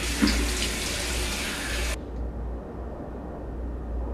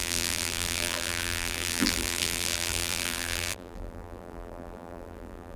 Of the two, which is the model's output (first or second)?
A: second